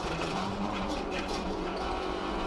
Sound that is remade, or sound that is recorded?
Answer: remade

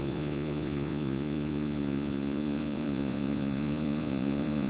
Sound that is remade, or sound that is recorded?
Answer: remade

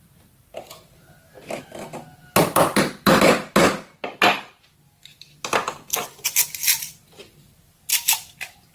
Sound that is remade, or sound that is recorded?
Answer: recorded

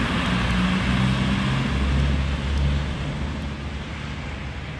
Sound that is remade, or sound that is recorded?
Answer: recorded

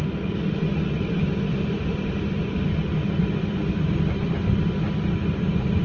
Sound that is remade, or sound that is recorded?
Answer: recorded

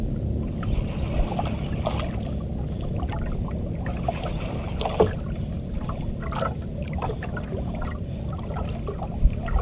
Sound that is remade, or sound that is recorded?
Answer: recorded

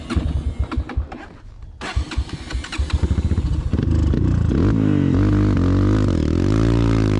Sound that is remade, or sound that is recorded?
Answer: recorded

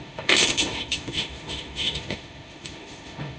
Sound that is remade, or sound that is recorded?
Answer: remade